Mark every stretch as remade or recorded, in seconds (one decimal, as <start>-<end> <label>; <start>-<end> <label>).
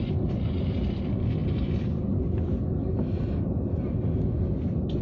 0.0-5.0 recorded